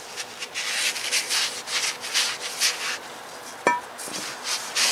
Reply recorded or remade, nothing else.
recorded